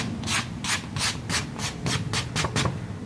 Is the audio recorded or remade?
recorded